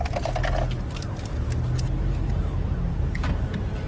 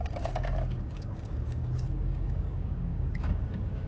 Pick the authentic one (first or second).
first